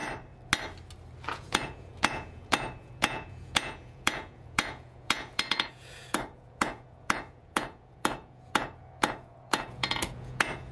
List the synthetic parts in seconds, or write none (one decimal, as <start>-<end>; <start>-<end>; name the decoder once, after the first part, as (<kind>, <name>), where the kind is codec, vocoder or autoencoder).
1.3-10.7 (vocoder, Vocos)